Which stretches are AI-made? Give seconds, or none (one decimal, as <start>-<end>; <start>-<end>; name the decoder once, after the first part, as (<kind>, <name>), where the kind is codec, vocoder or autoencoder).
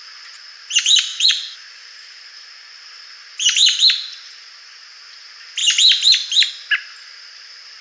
1.1-2.2 (vocoder, Vocos)